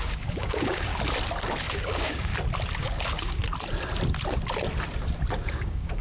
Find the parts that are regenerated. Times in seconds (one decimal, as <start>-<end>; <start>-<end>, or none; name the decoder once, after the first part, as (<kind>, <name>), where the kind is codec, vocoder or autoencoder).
0.0-0.9 (codec, DAC); 1.7-2.3; 2.8-3.4; 5.3-6.0